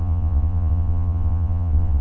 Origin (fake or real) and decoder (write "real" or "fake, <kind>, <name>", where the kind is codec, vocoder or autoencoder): fake, vocoder, Vocos